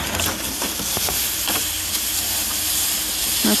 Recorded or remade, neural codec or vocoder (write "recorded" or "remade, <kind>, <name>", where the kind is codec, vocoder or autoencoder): recorded